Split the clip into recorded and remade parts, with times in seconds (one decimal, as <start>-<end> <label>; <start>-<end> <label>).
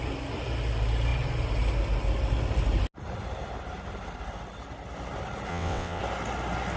0.0-5.5 recorded; 5.5-6.0 remade; 6.0-6.8 recorded